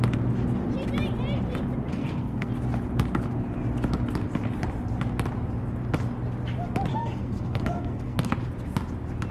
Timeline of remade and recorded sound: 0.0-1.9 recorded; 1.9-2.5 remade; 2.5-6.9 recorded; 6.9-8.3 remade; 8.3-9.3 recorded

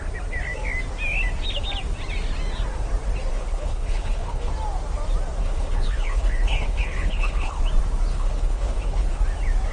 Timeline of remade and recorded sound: 0.0-3.3 recorded; 3.3-4.5 remade; 4.5-5.4 recorded; 5.4-7.6 remade; 7.6-8.1 recorded; 8.1-9.2 remade; 9.2-9.7 recorded